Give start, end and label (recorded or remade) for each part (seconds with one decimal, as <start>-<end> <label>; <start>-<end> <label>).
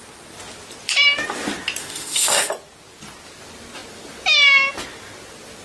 0.0-1.8 recorded; 1.8-2.5 remade; 2.5-5.6 recorded